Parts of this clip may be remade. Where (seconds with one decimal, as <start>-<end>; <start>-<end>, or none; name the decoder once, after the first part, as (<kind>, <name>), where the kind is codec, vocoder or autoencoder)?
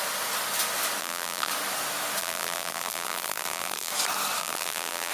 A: 1.0-1.5 (vocoder, BigVGAN v2); 2.2-3.9; 4.4-5.1